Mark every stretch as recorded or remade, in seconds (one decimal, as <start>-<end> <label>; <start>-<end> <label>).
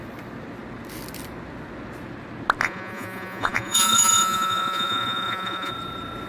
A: 0.0-2.6 recorded; 2.6-5.7 remade; 5.7-6.3 recorded